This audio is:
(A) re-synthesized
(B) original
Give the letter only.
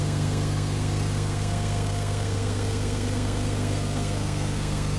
A